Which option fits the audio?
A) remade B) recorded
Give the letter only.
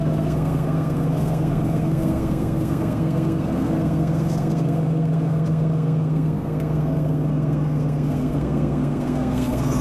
A